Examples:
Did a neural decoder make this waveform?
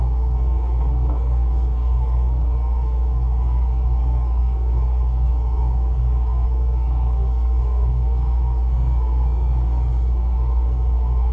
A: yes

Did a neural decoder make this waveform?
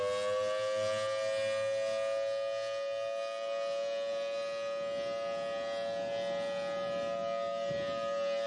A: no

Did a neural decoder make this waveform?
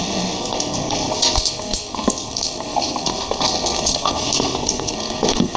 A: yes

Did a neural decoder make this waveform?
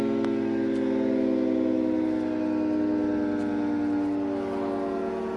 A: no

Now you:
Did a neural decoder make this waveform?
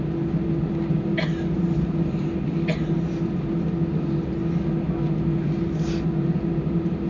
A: no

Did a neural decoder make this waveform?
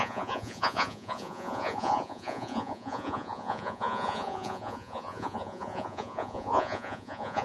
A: yes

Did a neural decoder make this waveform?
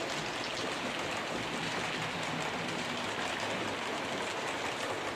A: no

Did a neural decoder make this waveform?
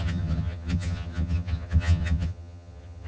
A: yes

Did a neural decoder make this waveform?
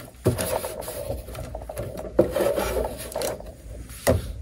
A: yes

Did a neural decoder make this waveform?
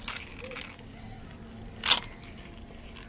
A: no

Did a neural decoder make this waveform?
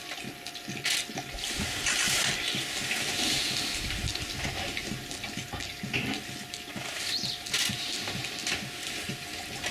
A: no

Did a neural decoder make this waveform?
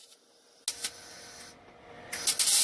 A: no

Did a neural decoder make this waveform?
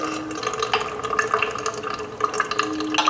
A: no